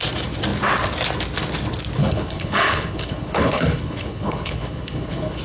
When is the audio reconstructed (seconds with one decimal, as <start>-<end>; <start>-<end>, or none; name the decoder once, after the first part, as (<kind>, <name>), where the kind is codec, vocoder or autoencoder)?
2.0-5.4 (codec, HILCodec)